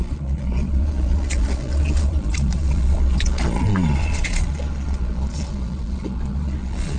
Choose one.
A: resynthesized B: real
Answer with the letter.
A